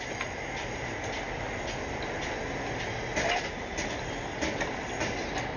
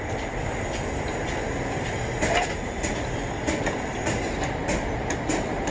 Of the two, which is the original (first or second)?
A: first